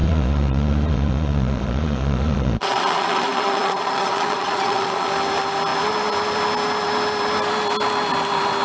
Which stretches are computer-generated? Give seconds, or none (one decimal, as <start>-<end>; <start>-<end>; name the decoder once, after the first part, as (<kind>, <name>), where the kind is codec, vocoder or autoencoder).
0.0-5.1 (vocoder, Vocos)